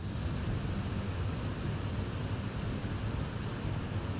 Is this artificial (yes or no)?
no